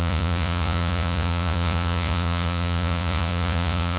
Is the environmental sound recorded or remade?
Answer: remade